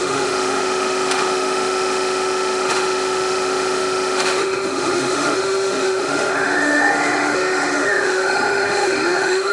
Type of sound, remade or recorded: remade